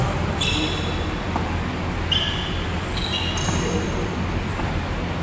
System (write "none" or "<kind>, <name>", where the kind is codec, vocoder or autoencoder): none